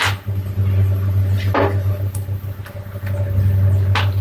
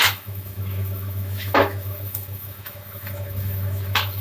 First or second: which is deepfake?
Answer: second